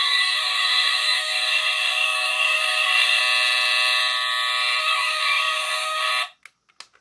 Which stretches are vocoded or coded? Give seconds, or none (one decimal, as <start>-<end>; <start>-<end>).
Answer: 0.0-3.2; 4.8-6.1